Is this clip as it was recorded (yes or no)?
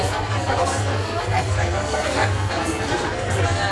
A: no